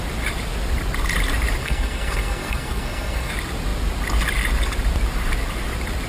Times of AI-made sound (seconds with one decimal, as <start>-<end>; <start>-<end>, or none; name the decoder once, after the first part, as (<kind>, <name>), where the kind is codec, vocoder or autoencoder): 1.6-3.3 (codec, SNAC)